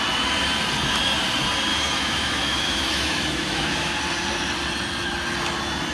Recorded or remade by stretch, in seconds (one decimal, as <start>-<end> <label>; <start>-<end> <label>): 0.0-1.7 recorded; 1.7-3.9 remade; 3.9-5.9 recorded